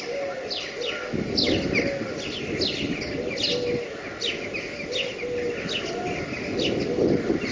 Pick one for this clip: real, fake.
real